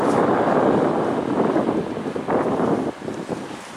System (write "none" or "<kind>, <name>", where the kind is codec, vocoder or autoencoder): none